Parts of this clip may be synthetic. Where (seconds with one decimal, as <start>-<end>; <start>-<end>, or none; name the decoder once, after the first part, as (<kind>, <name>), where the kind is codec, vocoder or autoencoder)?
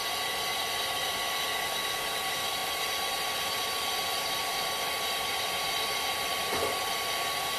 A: none